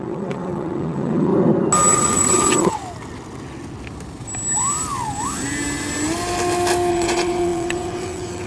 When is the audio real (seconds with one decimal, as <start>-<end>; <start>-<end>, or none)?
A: 1.3-1.9; 2.8-6.9